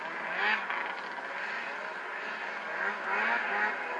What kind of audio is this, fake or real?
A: real